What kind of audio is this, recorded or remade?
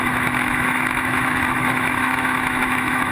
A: remade